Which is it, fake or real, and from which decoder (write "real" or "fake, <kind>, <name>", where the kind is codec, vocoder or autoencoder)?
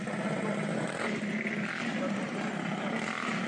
real